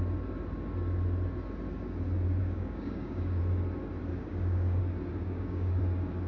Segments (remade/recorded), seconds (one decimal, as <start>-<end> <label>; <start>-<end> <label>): 0.0-2.4 recorded; 2.4-3.4 remade; 3.4-4.1 recorded; 4.1-4.8 remade; 4.8-5.2 recorded; 5.2-5.8 remade; 5.8-6.3 recorded